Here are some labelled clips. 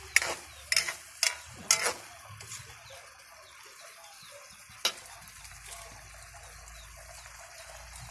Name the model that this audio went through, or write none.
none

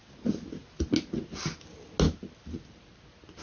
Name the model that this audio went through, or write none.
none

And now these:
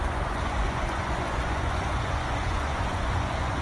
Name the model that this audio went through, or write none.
vocoder, Vocos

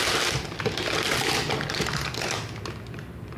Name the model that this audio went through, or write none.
none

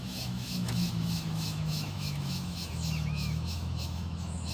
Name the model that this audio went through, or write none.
autoencoder, DAC-VAE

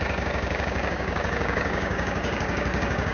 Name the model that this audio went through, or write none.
codec, DAC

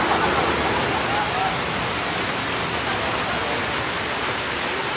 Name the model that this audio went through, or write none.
none